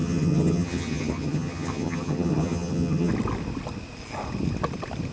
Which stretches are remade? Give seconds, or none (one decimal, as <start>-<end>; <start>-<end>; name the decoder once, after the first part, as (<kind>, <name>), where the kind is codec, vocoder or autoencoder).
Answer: 0.0-3.1 (vocoder, HiFi-GAN)